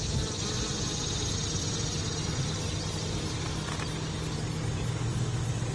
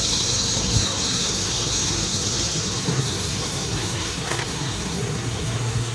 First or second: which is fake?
second